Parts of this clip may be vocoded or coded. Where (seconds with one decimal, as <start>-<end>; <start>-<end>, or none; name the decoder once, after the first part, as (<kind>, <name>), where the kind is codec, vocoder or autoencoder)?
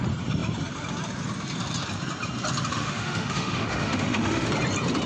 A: 2.7-4.5 (autoencoder, DAC-VAE)